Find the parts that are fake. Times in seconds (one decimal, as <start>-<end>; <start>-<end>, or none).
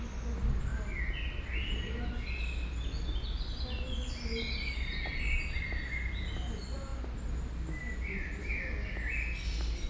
none